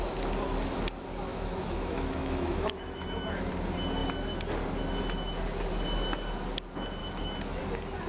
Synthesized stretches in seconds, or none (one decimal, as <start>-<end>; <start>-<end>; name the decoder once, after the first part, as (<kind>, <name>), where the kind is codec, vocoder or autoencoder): 1.3-3.5 (autoencoder, DAC-VAE); 7.0-7.6